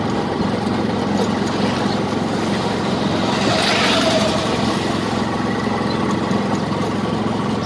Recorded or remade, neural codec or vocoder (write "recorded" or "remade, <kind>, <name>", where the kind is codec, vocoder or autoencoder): recorded